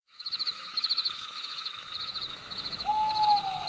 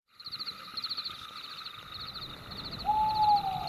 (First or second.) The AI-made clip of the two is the first